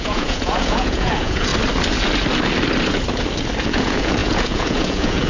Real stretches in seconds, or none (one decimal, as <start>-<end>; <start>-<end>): 1.5-3.6